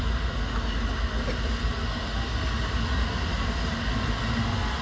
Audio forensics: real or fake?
real